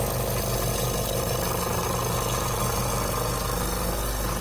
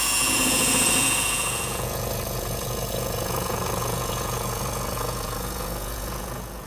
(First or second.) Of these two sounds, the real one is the first